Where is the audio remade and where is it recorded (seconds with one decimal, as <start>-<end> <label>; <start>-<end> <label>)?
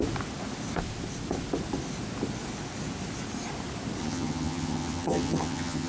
0.0-4.0 recorded; 4.0-5.9 remade